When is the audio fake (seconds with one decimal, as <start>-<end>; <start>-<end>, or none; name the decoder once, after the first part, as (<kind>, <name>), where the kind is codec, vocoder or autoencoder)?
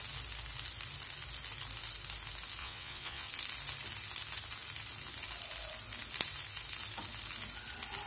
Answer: 2.6-3.3 (vocoder, WaveNeXt)